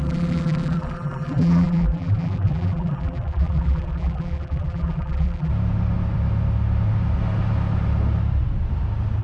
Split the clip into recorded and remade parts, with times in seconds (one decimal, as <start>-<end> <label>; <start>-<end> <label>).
0.0-5.5 remade; 5.5-9.2 recorded